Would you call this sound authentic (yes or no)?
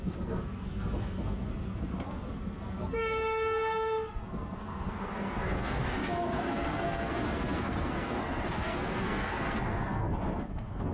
no